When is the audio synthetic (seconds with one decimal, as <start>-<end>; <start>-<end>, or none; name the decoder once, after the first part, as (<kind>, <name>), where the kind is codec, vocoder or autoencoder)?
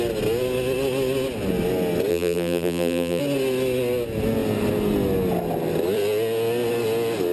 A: 2.1-3.2 (vocoder, BigVGAN v2)